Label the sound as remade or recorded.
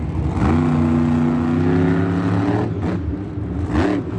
recorded